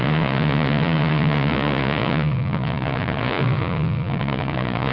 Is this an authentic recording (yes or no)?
no